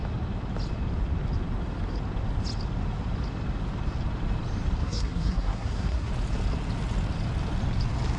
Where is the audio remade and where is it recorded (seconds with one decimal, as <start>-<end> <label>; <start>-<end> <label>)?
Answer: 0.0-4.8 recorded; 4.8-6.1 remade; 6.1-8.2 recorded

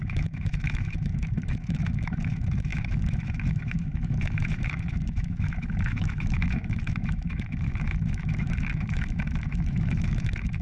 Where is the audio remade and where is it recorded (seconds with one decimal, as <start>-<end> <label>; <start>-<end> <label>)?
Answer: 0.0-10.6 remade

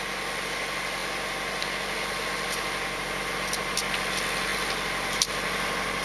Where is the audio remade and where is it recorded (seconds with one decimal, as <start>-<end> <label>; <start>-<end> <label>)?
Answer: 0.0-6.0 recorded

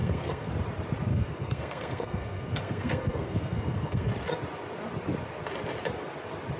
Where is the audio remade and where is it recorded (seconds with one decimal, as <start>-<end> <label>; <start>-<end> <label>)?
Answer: 0.0-0.5 remade; 0.5-1.1 recorded; 1.1-4.1 remade; 4.1-6.6 recorded

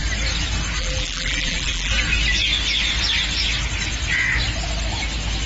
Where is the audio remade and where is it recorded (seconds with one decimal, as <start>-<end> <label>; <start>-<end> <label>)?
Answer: 0.0-0.8 recorded; 0.8-1.9 remade; 1.9-5.5 recorded

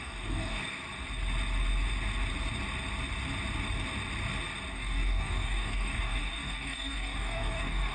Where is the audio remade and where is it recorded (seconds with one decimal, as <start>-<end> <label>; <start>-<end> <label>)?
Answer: 0.0-0.6 remade; 0.6-4.7 recorded; 4.7-7.9 remade

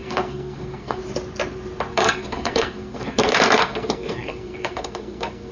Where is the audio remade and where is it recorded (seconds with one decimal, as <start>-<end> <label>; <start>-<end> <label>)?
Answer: 0.0-1.0 remade; 1.0-1.9 recorded; 1.9-5.5 remade

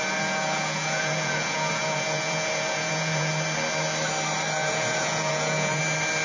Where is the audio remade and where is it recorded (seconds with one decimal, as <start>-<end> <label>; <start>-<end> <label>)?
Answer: 0.0-3.3 remade; 3.3-4.6 recorded; 4.6-5.8 remade; 5.8-6.2 recorded